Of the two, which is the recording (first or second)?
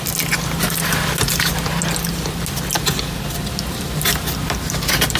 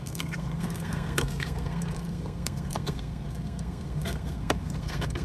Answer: first